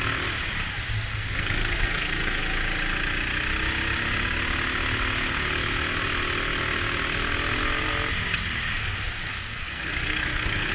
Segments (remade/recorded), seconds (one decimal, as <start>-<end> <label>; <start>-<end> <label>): 0.0-1.1 recorded; 1.1-2.4 remade; 2.4-9.3 recorded; 9.3-10.7 remade

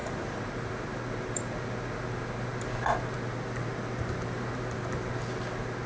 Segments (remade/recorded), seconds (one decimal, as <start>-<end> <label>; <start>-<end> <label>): 0.0-5.9 recorded

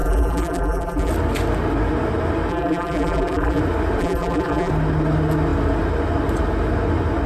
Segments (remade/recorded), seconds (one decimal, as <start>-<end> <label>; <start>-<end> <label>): 0.0-1.1 remade; 1.1-2.5 recorded; 2.5-3.6 remade; 3.6-4.0 recorded; 4.0-4.7 remade; 4.7-7.3 recorded

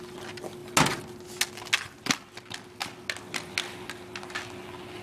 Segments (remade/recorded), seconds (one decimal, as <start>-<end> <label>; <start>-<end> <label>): 0.0-5.0 recorded

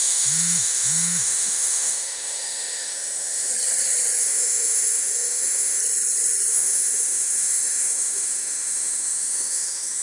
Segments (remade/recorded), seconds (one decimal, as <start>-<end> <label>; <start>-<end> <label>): 0.0-3.5 remade; 3.5-4.2 recorded; 4.2-5.8 remade; 5.8-6.5 recorded; 6.5-10.0 remade